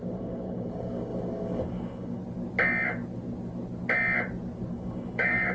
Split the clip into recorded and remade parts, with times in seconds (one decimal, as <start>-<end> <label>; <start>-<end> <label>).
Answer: 0.0-2.2 remade; 2.2-4.7 recorded; 4.7-5.5 remade